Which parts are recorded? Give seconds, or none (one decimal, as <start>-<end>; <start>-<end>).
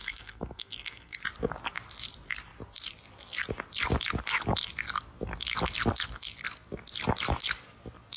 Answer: 1.2-8.2